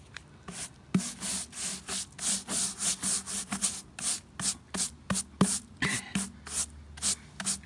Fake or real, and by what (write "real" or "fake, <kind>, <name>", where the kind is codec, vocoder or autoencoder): real